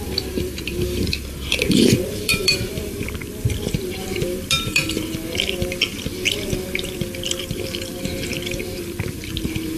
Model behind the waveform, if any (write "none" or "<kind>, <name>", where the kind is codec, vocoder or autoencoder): vocoder, BigVGAN v2